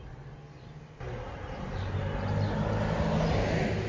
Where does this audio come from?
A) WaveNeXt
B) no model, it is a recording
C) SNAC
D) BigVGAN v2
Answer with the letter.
B